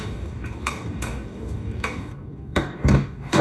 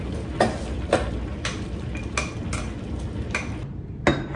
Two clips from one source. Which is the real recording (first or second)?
second